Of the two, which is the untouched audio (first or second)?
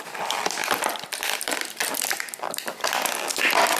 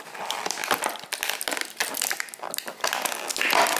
second